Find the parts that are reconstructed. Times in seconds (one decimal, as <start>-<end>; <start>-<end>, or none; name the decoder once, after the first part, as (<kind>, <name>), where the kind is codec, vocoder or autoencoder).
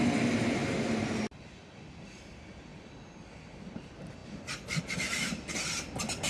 none